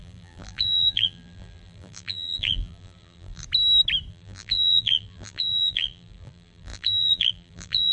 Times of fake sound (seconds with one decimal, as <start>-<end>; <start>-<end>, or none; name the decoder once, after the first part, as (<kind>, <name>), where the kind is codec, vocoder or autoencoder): 0.0-3.4 (vocoder, BigVGAN v2); 4.1-7.9